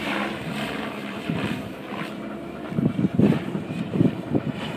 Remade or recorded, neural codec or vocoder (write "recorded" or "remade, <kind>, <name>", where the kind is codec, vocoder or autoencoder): remade, vocoder, BigVGAN v2